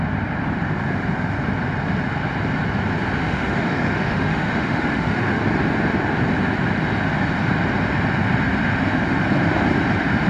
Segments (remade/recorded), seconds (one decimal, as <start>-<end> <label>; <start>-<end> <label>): 0.0-3.2 recorded; 3.2-5.4 remade; 5.4-10.3 recorded